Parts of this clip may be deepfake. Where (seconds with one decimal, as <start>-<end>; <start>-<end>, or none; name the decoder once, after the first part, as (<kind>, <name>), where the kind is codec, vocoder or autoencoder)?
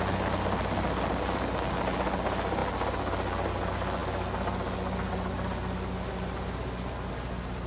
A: none